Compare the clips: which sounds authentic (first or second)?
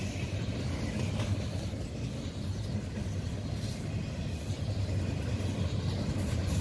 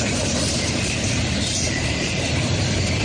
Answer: first